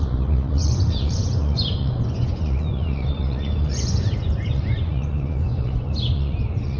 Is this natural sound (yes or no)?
no